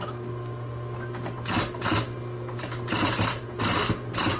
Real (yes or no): yes